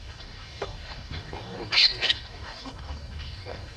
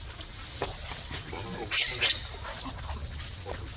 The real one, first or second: second